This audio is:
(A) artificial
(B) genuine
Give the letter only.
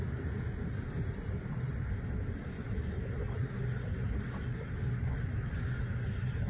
B